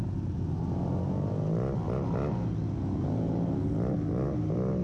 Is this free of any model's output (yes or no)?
yes